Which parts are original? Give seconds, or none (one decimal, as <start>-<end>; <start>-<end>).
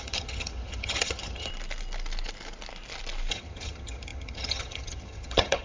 1.5-3.3